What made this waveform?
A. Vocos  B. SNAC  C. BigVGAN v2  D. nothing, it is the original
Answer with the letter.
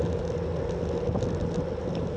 D